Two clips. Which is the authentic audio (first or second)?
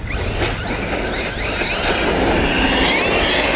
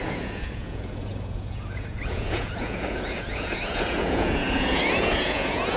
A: first